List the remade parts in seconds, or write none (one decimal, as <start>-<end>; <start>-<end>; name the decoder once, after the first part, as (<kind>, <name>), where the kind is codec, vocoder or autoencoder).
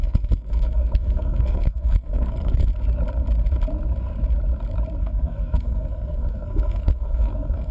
0.0-2.7 (codec, SNAC); 5.0-7.7